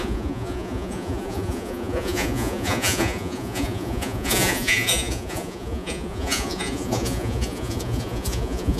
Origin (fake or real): fake